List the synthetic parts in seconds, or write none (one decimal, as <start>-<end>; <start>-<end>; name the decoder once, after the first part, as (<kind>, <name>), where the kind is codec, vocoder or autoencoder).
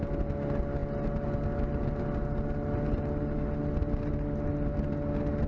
none